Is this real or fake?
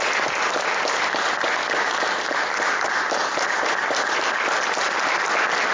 real